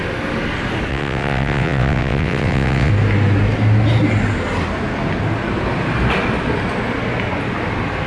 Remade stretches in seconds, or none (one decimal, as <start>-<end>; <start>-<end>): 0.9-2.9